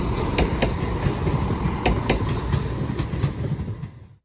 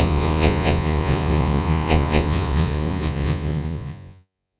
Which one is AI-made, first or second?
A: second